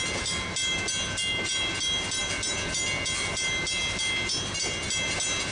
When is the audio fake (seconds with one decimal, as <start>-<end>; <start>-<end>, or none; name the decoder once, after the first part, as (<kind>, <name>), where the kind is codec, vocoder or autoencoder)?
none

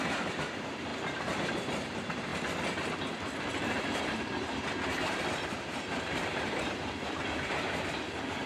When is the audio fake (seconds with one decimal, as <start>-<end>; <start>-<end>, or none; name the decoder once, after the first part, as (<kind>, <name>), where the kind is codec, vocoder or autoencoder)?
0.0-2.3 (vocoder, BigVGAN v2); 5.1-8.5

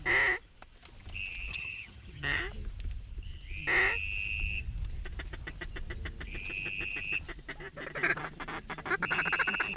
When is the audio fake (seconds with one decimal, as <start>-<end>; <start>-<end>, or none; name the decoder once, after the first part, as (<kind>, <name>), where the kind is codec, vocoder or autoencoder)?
1.5-2.4 (vocoder, HiFi-GAN)

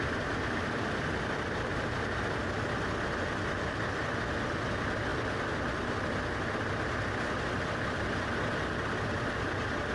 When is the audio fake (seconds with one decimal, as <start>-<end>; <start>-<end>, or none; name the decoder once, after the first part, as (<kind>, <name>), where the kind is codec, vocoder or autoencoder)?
none

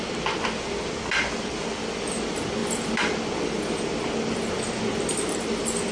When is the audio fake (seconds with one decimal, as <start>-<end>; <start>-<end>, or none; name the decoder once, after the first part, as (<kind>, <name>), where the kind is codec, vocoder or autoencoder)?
none